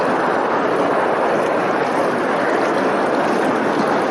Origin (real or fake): real